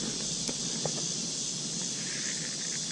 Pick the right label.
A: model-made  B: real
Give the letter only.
B